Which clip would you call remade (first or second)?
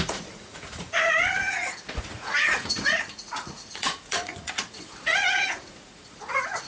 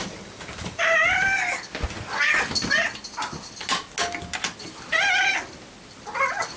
first